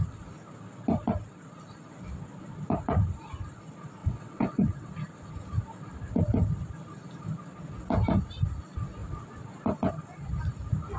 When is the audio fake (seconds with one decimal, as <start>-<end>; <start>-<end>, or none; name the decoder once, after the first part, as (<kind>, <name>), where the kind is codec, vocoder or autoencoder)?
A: 4.0-4.9 (vocoder, WaveNeXt)